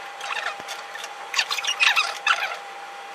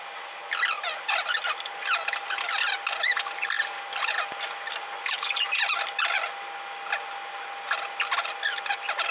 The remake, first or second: first